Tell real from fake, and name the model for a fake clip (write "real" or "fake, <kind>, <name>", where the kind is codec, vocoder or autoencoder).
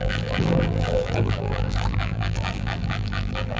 fake, vocoder, BigVGAN v2